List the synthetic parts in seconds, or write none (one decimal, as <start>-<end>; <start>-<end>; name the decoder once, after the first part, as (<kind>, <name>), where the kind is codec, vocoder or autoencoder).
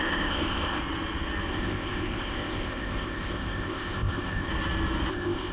0.0-0.8 (codec, ZipCodec); 1.5-4.5; 5.1-5.5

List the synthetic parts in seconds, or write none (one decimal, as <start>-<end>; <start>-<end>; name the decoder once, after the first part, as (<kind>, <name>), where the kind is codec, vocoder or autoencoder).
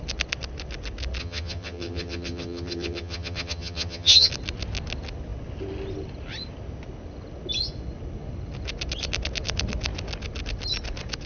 1.2-4.3 (vocoder, HiFi-GAN)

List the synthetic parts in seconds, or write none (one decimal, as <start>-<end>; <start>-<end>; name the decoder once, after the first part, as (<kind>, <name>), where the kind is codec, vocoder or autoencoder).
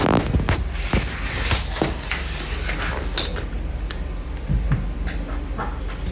3.3-4.3 (vocoder, BigVGAN v2)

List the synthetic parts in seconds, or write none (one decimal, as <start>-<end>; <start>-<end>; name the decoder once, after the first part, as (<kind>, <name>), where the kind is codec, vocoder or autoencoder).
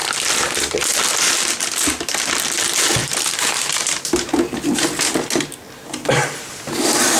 3.0-4.4 (vocoder, BigVGAN v2)